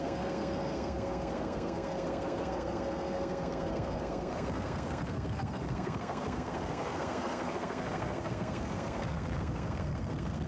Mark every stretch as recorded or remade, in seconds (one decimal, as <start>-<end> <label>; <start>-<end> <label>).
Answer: 0.0-10.5 remade